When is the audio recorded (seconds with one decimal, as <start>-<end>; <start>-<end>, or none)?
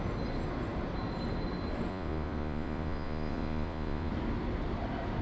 0.0-1.9; 4.1-5.2